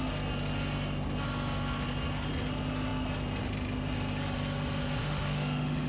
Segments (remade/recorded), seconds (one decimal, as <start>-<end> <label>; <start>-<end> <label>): 0.0-5.0 recorded; 5.0-5.9 remade